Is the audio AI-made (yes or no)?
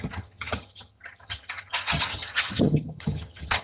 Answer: yes